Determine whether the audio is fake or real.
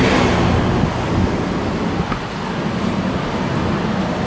real